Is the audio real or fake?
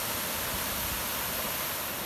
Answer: real